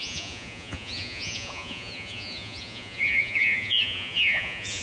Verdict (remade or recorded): remade